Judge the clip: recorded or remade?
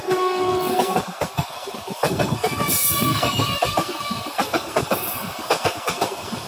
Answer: remade